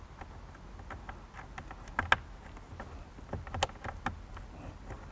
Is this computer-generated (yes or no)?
no